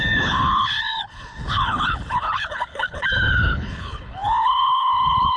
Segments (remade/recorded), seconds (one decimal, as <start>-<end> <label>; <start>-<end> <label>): 0.0-5.4 remade